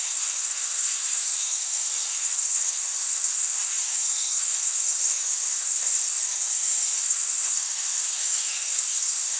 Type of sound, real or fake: fake